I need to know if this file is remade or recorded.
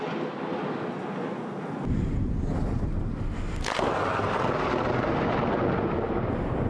recorded